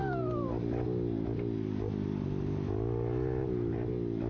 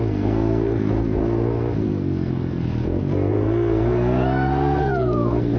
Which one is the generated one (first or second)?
second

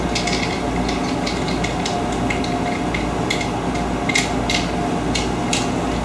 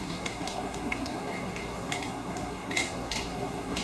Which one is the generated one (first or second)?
second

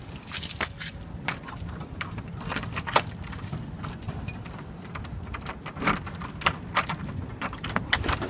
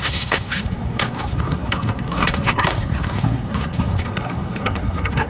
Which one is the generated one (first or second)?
second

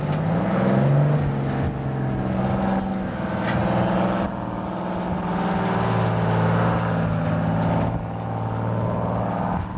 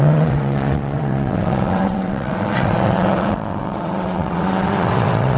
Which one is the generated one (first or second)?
second